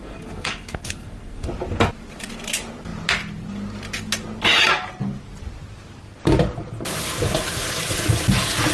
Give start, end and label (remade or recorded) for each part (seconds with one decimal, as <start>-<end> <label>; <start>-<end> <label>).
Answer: 0.0-1.5 remade; 1.5-8.7 recorded